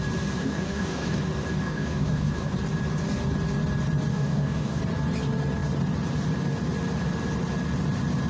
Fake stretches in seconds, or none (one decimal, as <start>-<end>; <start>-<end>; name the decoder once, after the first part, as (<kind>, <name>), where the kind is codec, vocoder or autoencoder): 0.4-1.2 (codec, DAC); 1.6-2.5; 4.1-4.8